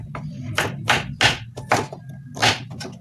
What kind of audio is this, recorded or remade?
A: recorded